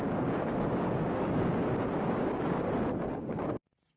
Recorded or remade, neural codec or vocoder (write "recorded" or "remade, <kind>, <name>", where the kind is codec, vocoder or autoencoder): remade, codec, DAC